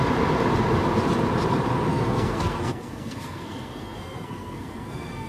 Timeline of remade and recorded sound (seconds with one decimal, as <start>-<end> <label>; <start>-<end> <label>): 0.0-1.9 recorded; 1.9-5.3 remade